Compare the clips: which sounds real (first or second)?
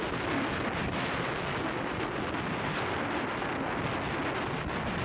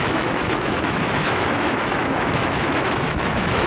first